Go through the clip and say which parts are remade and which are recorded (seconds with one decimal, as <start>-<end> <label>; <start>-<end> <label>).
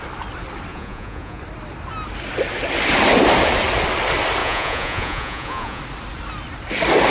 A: 0.0-0.7 recorded; 0.7-1.4 remade; 1.4-4.4 recorded; 4.4-5.8 remade; 5.8-7.1 recorded